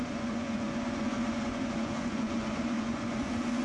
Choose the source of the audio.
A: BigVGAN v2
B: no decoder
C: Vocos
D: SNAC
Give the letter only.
C